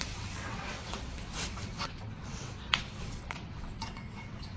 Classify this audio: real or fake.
fake